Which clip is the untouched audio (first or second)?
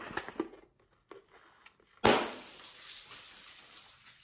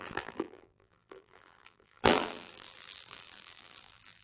first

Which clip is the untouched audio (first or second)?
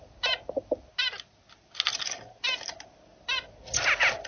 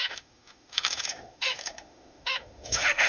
first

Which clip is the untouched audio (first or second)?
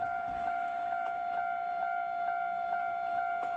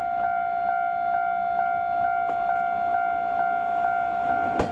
second